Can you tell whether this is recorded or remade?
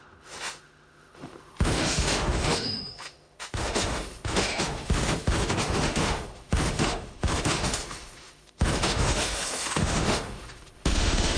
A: remade